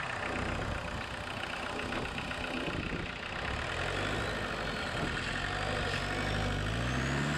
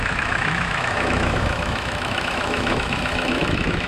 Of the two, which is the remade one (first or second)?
second